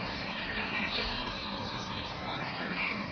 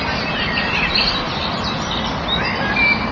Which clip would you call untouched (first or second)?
second